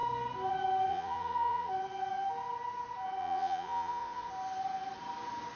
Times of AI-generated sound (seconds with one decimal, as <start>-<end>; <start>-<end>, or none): 0.9-1.7; 3.2-4.3